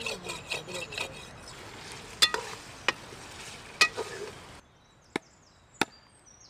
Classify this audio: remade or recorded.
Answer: recorded